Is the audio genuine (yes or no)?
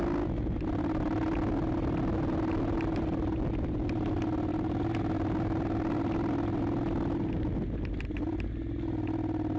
yes